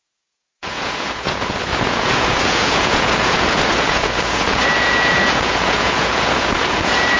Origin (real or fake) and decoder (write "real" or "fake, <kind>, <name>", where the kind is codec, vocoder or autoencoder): fake, vocoder, Vocos